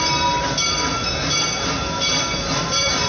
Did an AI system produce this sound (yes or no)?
no